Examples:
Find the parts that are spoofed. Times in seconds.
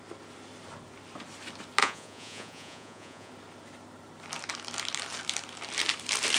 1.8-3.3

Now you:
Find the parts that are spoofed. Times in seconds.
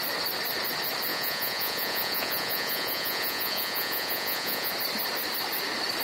1.1-4.7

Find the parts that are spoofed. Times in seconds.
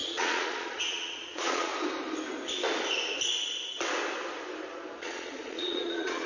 0.0-1.7; 5.0-6.3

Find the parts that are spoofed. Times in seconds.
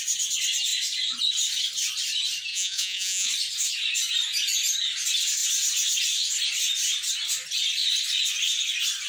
2.5-3.3